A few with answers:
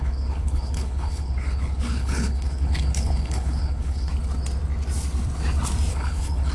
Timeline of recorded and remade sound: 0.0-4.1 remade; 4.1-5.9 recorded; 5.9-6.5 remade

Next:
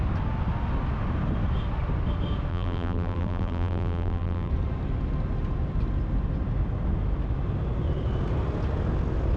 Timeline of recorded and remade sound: 0.0-2.5 recorded; 2.5-4.5 remade; 4.5-9.4 recorded

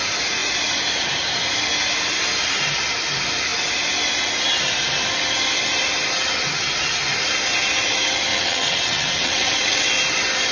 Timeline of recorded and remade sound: 0.0-8.3 recorded; 8.3-9.9 remade; 9.9-10.5 recorded

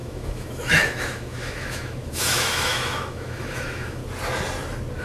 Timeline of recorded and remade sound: 0.0-4.0 remade; 4.0-5.0 recorded

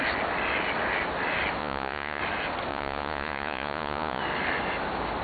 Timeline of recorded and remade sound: 0.0-1.6 recorded; 1.6-2.2 remade; 2.2-2.7 recorded; 2.7-4.2 remade; 4.2-5.2 recorded

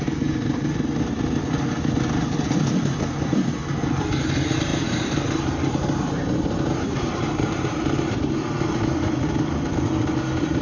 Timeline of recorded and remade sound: 0.0-4.7 recorded; 4.7-8.3 remade; 8.3-10.6 recorded